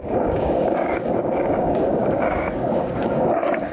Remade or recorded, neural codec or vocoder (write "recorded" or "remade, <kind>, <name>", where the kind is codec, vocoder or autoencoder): remade, codec, DAC